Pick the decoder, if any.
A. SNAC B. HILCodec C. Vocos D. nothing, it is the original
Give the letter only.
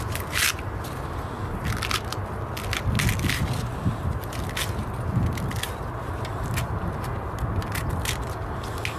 D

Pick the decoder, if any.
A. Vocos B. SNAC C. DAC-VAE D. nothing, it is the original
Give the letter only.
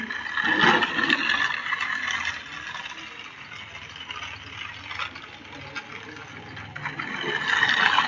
D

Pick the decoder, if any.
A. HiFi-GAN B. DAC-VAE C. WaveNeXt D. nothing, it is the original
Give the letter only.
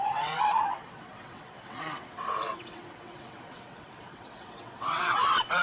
C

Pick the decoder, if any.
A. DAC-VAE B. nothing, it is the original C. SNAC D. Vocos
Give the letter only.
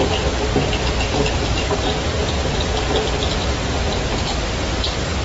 B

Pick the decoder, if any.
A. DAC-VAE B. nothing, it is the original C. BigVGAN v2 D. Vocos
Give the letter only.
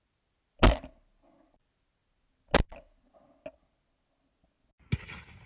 B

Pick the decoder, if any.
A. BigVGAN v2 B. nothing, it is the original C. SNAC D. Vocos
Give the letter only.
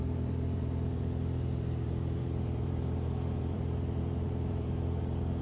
A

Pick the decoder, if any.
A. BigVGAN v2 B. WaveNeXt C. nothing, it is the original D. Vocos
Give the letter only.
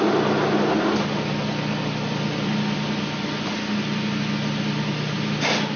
C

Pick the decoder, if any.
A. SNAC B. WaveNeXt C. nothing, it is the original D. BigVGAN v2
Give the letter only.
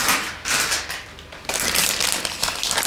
C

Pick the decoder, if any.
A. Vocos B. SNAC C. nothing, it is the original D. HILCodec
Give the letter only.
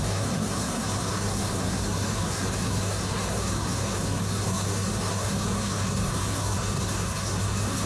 B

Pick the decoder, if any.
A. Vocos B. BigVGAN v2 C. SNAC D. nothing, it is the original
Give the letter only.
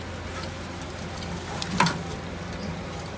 D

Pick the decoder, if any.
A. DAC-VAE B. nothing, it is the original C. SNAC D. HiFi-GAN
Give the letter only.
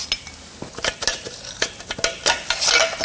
B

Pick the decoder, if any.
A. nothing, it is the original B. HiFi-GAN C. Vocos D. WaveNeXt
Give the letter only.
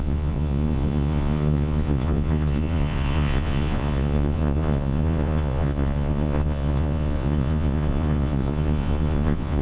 C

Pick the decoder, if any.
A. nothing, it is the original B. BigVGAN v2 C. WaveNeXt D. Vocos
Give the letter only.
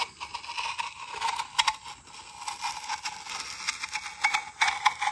A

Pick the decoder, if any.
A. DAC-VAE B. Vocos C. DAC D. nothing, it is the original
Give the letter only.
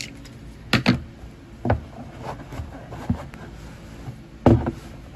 D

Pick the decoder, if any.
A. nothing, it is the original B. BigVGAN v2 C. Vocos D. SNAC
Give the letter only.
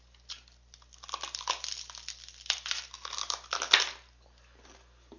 A